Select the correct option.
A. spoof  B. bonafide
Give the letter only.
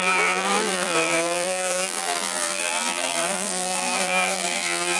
A